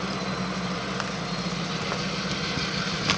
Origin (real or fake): real